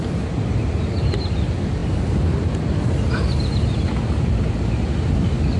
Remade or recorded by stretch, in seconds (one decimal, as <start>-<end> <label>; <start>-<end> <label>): 0.0-5.6 recorded